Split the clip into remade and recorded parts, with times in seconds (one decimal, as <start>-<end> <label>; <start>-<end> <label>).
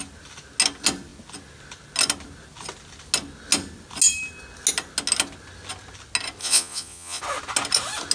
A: 0.0-6.4 recorded; 6.4-7.2 remade; 7.2-8.1 recorded